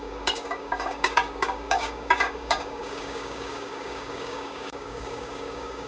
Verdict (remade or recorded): remade